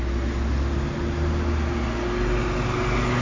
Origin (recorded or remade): recorded